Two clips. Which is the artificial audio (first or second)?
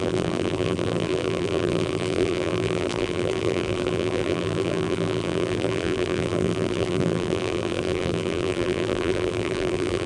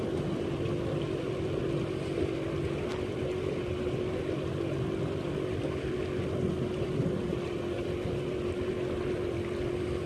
first